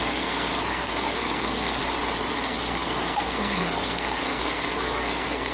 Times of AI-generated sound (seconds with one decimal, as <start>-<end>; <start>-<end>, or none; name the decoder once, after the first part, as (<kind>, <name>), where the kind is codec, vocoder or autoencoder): 0.0-1.8 (codec, SNAC); 2.3-5.5